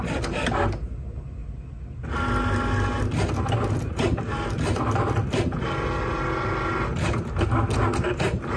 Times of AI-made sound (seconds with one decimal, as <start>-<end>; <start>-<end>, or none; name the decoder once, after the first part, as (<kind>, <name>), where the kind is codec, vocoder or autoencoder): none